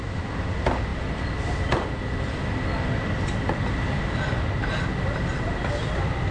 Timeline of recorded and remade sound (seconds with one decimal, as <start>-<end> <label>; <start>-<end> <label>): 0.0-6.3 recorded